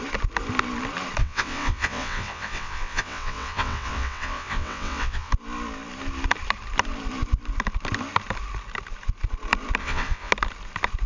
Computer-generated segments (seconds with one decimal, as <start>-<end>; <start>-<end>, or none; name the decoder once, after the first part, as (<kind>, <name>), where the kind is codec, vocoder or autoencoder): 1.2-5.3 (vocoder, WaveNeXt); 9.8-10.3